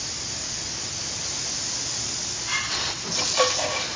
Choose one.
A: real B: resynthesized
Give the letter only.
A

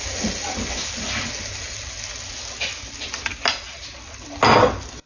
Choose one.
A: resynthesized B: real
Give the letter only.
B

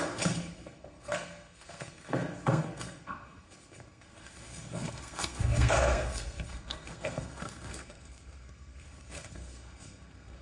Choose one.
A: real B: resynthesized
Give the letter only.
B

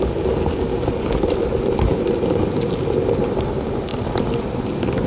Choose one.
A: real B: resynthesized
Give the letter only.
A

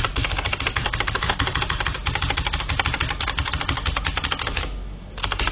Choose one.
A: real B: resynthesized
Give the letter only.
A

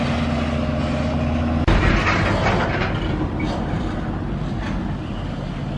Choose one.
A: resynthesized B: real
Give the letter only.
B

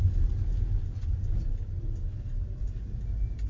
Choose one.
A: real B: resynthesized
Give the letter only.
A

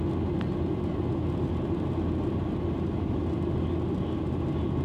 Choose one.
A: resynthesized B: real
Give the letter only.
B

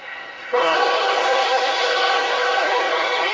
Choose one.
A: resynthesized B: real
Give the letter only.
A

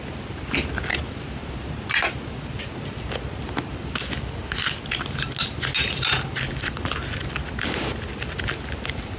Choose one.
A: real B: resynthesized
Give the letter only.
A